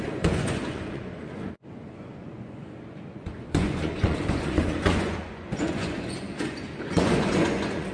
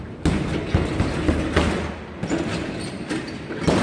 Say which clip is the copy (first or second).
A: first